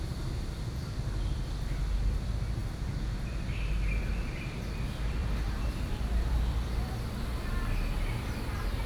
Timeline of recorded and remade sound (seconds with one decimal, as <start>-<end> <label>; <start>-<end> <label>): 0.0-5.2 recorded; 5.2-6.9 remade; 6.9-8.9 recorded